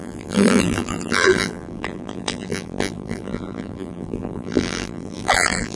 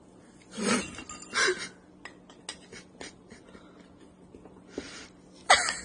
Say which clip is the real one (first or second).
second